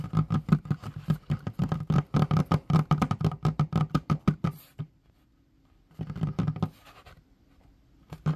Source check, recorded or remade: recorded